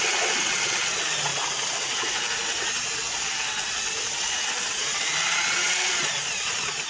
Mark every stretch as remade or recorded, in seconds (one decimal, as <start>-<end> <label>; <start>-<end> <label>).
0.0-6.9 recorded